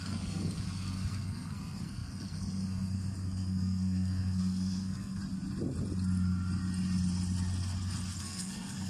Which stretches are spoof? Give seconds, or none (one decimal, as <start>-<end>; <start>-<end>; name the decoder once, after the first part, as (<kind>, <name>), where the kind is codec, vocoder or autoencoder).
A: 0.0-5.2 (codec, SNAC); 8.2-8.9